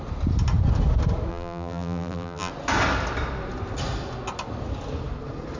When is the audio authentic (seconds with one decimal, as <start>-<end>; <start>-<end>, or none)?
0.0-1.3; 2.5-5.6